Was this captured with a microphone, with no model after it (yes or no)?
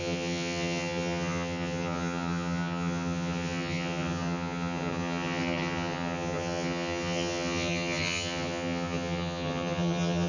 no